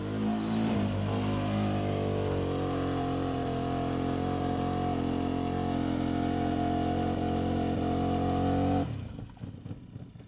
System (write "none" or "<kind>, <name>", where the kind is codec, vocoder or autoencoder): none